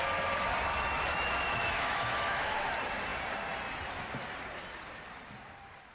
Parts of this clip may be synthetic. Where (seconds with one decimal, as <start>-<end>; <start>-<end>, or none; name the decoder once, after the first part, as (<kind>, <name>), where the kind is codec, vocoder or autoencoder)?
1.1-2.7 (autoencoder, DAC-VAE)